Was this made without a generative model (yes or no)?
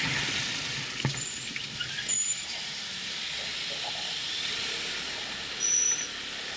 yes